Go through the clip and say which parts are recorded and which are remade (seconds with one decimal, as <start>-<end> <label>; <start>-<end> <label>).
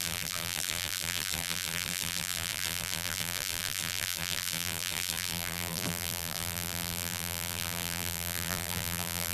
0.0-9.3 remade